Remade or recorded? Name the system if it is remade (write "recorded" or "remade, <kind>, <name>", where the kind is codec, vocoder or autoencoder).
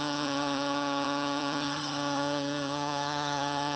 remade, vocoder, HiFi-GAN